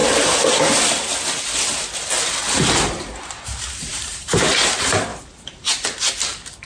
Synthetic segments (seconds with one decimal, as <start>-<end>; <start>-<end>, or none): 3.9-4.6; 5.1-5.7